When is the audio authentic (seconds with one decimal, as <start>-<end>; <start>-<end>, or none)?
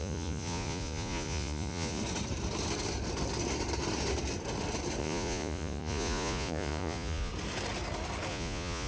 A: 2.0-5.0; 7.3-8.3